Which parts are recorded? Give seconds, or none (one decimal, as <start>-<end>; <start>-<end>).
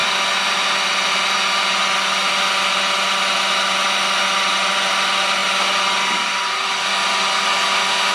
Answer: 0.0-8.1